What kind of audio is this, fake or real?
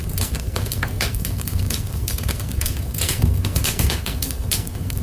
fake